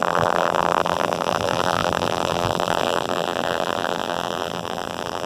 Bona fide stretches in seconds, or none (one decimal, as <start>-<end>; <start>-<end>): none